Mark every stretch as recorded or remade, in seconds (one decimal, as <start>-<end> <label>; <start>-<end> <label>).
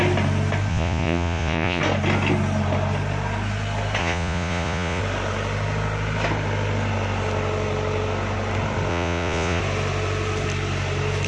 0.0-0.7 recorded; 0.7-1.8 remade; 1.8-4.0 recorded; 4.0-5.0 remade; 5.0-8.9 recorded; 8.9-9.6 remade; 9.6-11.3 recorded